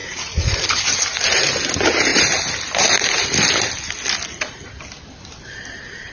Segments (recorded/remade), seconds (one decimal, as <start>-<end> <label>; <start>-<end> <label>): 0.0-0.6 remade; 0.6-6.1 recorded